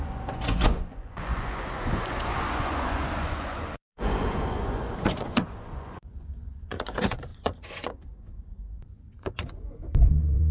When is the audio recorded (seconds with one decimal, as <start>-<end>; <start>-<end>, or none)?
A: none